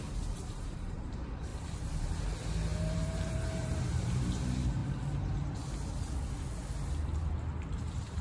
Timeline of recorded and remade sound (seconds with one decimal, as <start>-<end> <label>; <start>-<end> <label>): 0.0-1.5 remade; 1.5-2.2 recorded; 2.2-4.8 remade; 4.8-7.6 recorded; 7.6-8.2 remade